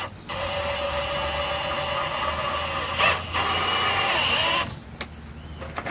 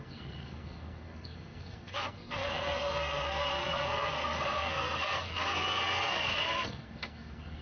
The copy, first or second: second